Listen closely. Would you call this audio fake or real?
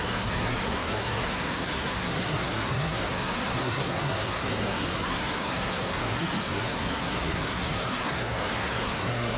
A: fake